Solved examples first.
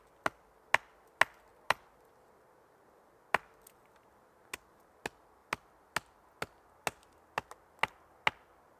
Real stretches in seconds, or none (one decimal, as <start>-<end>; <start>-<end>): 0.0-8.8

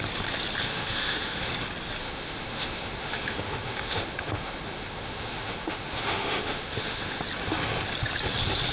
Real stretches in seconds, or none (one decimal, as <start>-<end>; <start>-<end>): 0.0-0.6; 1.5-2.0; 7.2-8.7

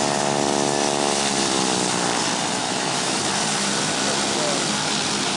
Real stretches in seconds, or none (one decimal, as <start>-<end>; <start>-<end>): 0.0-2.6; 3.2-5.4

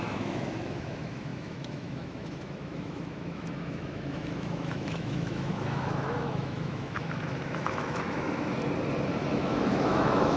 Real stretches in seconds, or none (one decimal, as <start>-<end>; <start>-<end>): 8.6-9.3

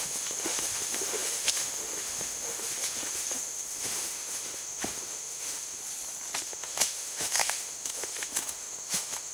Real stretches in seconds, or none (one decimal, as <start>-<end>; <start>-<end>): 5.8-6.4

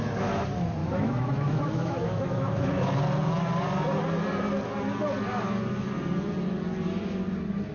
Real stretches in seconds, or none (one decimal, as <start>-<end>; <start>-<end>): 0.0-0.8; 2.9-7.7

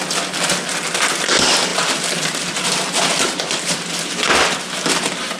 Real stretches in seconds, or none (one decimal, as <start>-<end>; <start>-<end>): 0.0-5.4